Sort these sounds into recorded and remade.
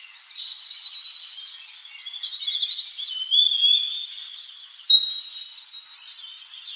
recorded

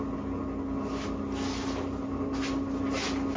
recorded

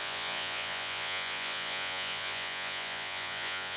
remade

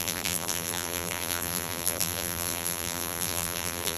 remade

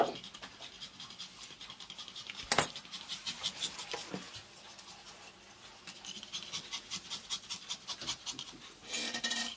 recorded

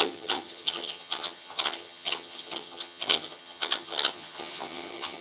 remade